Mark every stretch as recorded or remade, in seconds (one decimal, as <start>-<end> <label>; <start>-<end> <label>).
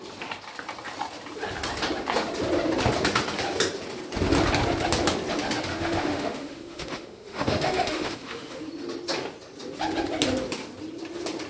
0.0-5.7 recorded; 5.7-8.6 remade; 8.6-11.5 recorded